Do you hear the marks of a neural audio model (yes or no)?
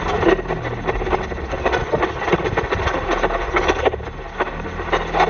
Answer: no